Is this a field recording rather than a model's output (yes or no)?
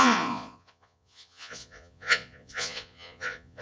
no